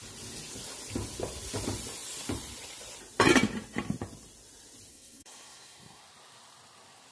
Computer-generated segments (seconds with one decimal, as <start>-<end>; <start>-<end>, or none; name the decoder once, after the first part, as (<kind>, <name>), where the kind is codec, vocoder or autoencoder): 4.9-6.0 (codec, SNAC)